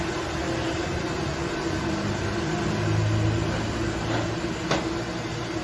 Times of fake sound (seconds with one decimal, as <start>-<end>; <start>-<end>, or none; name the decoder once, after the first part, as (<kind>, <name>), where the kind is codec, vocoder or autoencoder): none